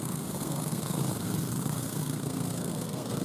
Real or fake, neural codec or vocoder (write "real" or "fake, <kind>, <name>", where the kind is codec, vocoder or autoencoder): fake, codec, SNAC